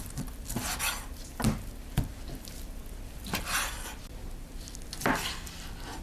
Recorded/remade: recorded